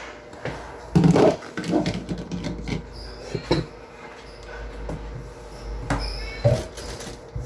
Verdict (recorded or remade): recorded